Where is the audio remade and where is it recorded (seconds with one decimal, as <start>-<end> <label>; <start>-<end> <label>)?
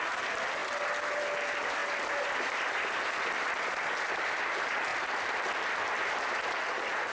0.0-1.8 recorded; 1.8-3.0 remade; 3.0-4.9 recorded; 4.9-5.9 remade; 5.9-7.1 recorded